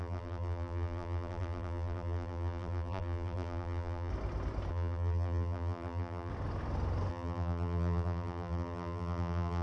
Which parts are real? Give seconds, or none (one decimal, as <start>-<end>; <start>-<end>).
4.1-4.7; 6.3-7.1